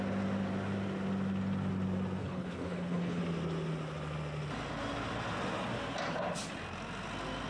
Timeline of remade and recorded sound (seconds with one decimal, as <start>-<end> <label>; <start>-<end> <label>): 0.0-2.2 recorded; 2.2-3.2 remade; 3.2-7.5 recorded